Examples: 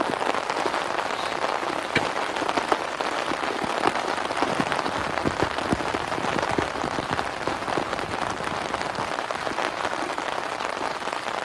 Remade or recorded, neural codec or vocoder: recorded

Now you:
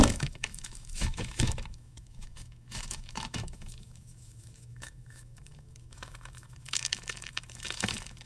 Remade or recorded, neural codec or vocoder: remade, autoencoder, DAC-VAE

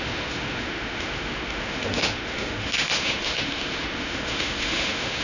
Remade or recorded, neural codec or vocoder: remade, autoencoder, DAC-VAE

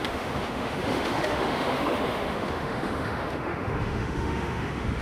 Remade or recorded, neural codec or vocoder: remade, autoencoder, DAC-VAE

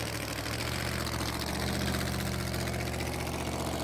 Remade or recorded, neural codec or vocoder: recorded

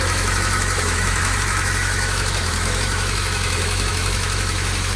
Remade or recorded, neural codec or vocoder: remade, autoencoder, DAC-VAE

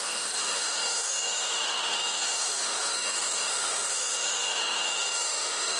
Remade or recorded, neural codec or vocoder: remade, autoencoder, DAC-VAE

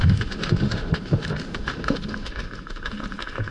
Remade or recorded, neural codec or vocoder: remade, autoencoder, DAC-VAE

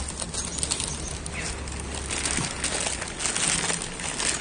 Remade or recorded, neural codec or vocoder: recorded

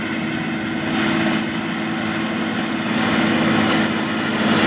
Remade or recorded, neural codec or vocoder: recorded